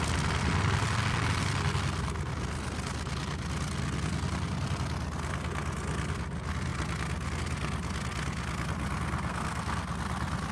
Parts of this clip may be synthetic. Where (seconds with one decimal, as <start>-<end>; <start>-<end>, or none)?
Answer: 9.3-9.8